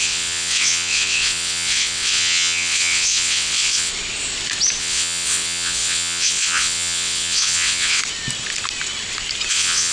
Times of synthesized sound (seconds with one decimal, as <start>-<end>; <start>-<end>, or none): 0.0-3.9; 4.8-8.0; 9.5-9.9